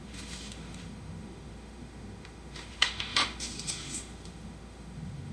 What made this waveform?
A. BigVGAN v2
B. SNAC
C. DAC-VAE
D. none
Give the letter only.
C